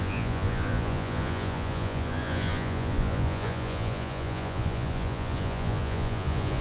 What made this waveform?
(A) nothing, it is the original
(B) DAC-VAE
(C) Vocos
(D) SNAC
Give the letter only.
C